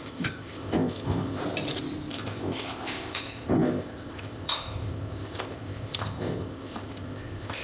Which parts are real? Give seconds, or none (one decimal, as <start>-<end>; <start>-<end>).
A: 1.4-2.1